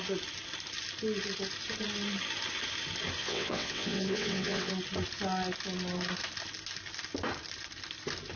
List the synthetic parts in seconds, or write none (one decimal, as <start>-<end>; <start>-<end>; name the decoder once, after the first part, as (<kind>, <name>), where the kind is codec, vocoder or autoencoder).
3.2-4.7 (vocoder, WaveNeXt)